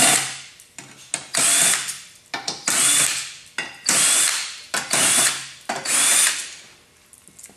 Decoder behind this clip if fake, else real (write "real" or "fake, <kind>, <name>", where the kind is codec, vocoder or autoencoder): real